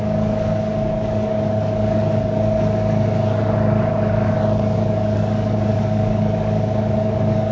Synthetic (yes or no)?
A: yes